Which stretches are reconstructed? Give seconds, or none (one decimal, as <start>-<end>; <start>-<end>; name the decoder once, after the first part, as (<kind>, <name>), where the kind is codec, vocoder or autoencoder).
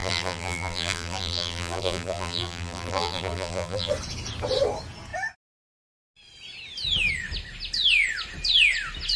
0.0-3.9 (vocoder, BigVGAN v2)